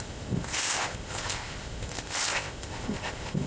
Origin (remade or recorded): remade